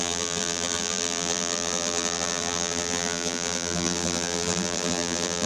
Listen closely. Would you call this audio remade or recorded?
remade